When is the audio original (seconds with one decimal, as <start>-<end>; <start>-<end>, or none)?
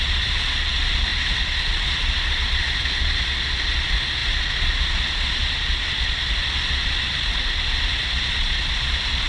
none